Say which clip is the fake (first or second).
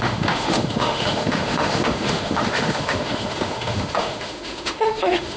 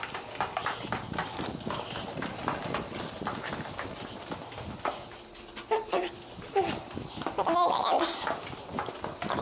first